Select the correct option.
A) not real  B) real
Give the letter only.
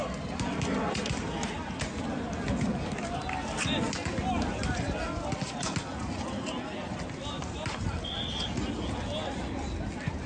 B